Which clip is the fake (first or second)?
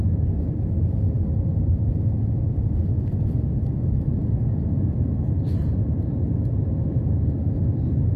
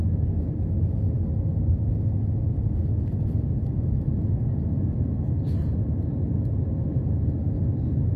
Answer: first